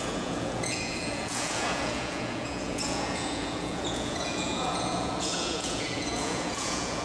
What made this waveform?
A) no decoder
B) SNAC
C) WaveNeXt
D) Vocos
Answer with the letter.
D